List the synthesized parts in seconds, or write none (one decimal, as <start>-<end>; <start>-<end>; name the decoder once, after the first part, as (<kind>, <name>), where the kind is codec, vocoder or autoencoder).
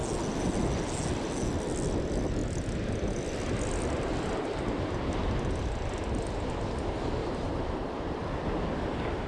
7.2-8.2 (vocoder, BigVGAN v2)